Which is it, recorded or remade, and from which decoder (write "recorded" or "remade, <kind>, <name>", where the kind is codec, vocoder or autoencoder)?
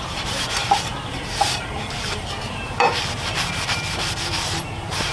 remade, vocoder, BigVGAN v2